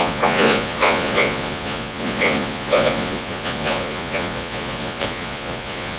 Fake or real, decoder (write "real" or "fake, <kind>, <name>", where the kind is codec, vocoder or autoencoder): fake, vocoder, Vocos